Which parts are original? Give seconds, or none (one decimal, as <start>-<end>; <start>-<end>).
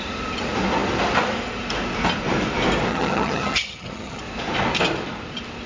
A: 0.0-2.9; 4.2-5.7